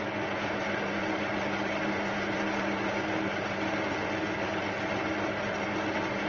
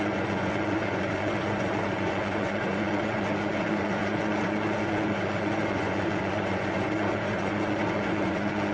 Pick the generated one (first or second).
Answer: second